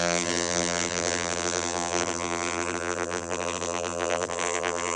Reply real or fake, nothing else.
fake